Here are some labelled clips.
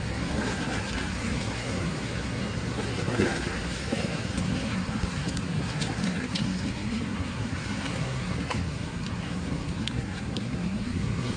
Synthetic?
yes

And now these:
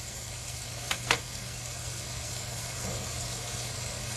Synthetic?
yes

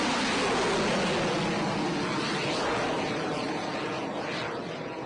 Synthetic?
no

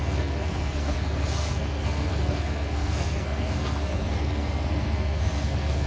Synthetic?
yes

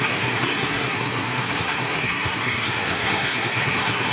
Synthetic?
yes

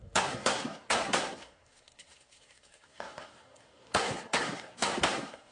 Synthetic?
yes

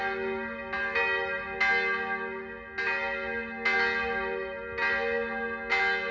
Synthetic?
no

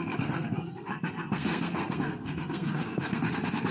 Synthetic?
yes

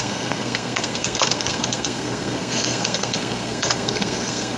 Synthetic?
yes